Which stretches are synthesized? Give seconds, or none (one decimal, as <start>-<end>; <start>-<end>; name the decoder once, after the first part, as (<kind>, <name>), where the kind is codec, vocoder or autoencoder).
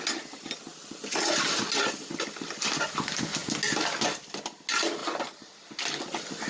none